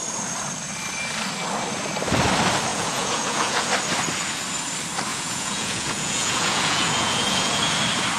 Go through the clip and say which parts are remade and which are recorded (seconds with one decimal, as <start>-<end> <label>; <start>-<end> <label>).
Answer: 0.0-2.7 recorded; 2.7-3.7 remade; 3.7-5.1 recorded; 5.1-7.7 remade; 7.7-8.2 recorded